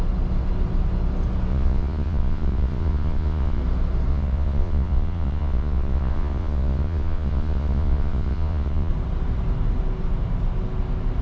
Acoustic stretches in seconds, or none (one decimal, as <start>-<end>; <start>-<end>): 0.0-1.5; 3.6-4.1; 8.9-11.2